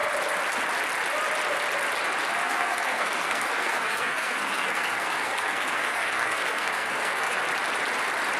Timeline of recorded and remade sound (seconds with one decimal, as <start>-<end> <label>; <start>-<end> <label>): 0.0-2.4 recorded; 2.4-7.4 remade; 7.4-8.4 recorded